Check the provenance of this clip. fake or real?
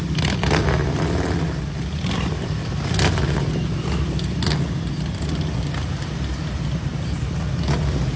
real